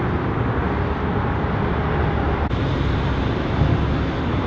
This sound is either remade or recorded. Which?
recorded